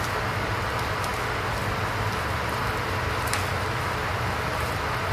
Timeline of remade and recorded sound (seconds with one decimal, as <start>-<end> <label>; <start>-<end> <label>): 0.0-5.1 recorded